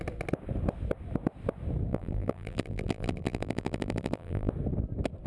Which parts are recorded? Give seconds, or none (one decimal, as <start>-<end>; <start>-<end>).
0.0-1.9; 4.5-5.3